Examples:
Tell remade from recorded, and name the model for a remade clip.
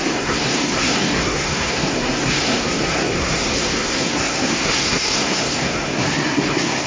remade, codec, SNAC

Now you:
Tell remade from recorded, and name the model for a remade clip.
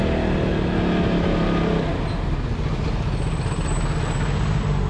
recorded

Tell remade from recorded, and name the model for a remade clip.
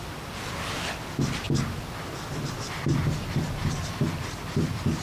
recorded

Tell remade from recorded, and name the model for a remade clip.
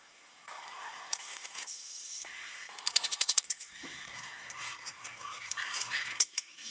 remade, codec, SNAC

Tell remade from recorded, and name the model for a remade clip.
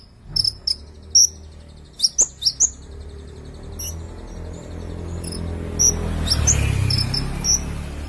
recorded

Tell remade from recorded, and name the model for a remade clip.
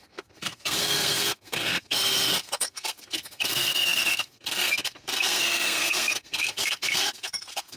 remade, codec, SNAC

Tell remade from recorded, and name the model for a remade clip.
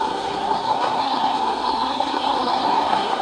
remade, codec, SNAC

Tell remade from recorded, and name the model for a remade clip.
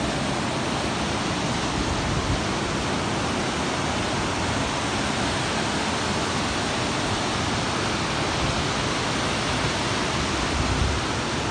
recorded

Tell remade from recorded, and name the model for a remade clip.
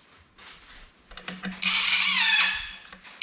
recorded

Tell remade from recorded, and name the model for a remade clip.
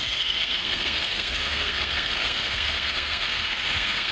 remade, codec, SNAC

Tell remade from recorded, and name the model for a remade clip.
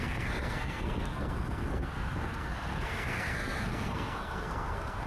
remade, codec, SNAC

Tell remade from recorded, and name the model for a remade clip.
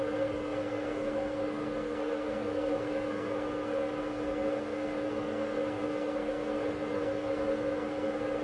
remade, codec, SNAC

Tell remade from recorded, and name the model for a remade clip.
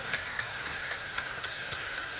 remade, codec, SNAC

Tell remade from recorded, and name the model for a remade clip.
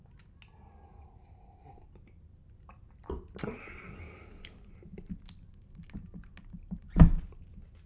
recorded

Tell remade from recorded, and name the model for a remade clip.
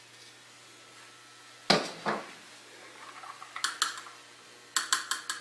recorded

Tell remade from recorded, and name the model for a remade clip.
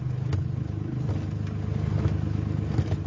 recorded